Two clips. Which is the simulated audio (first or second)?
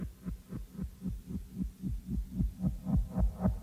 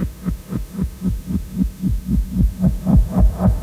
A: second